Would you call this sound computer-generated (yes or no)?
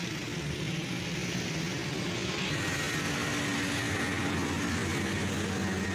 no